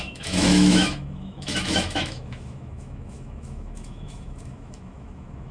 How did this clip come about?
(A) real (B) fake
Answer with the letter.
B